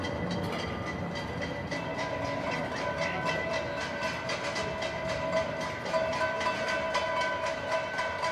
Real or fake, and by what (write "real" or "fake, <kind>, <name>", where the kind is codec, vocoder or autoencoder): real